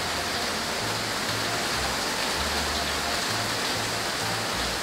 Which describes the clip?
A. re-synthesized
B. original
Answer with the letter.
B